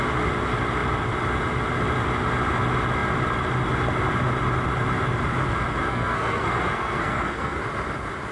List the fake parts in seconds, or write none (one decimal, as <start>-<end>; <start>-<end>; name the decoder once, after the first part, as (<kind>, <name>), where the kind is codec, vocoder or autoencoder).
5.8-7.6 (codec, SNAC)